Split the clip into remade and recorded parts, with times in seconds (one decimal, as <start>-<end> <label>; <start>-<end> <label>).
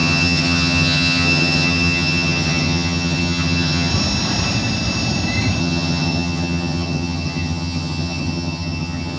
0.0-3.9 remade; 3.9-5.6 recorded; 5.6-9.2 remade